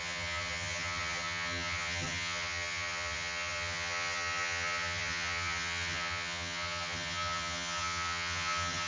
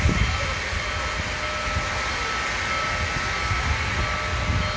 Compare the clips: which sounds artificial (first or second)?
first